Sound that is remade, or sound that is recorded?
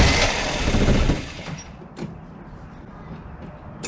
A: recorded